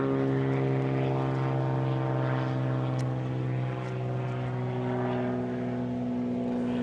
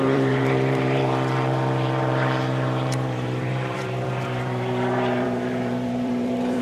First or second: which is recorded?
first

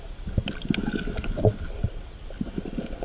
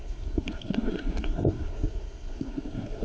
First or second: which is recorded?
first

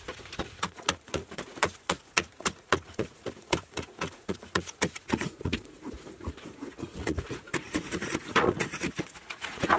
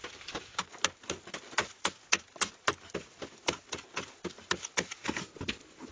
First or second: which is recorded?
second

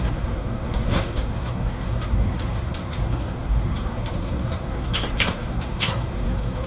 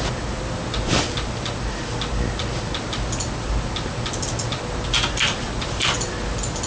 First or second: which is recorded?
second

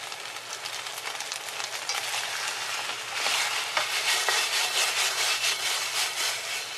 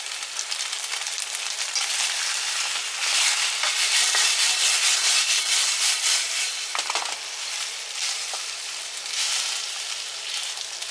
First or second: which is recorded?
first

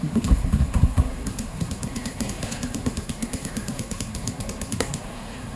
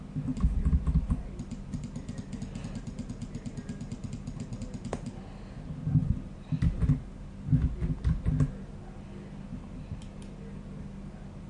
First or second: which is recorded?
second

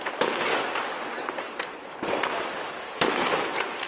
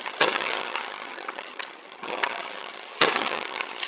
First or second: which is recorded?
first